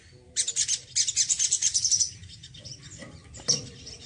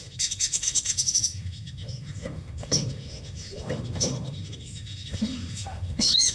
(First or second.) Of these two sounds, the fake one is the second